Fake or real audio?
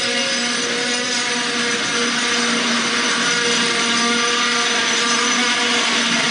real